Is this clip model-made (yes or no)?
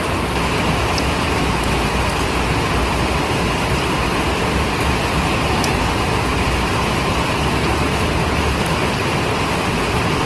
no